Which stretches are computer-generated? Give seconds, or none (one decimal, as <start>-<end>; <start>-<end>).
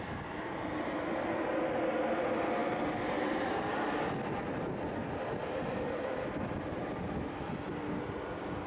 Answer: none